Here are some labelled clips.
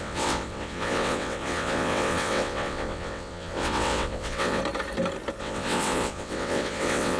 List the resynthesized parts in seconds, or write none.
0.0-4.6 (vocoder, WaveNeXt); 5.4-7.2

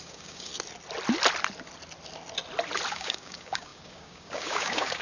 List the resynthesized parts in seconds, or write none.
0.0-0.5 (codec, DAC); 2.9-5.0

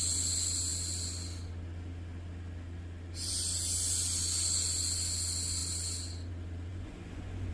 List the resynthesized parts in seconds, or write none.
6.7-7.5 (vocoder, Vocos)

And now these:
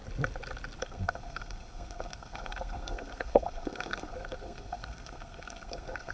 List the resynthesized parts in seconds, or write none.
0.8-6.1 (codec, SNAC)